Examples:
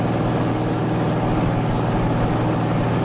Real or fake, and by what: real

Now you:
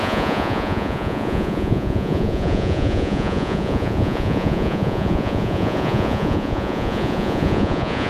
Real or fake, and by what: fake, vocoder, Vocos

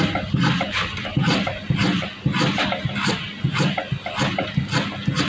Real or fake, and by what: real